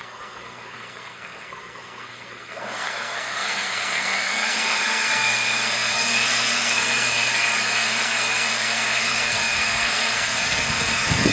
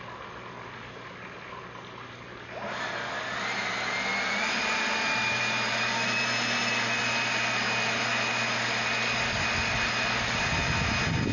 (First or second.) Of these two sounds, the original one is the second